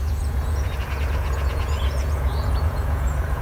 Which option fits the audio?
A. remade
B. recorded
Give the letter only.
A